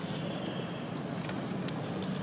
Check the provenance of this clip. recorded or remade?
recorded